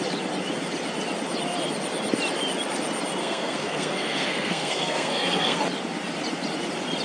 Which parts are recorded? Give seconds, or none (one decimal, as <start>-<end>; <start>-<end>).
0.0-3.2; 5.6-7.0